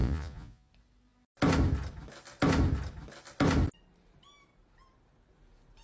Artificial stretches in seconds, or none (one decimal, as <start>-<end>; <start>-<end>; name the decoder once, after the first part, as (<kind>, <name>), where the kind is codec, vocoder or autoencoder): 0.0-0.7 (vocoder, Vocos)